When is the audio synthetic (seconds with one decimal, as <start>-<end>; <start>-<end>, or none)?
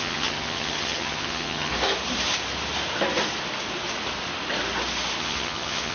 0.0-1.7; 5.2-5.9